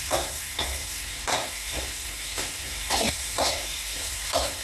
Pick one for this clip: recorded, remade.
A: remade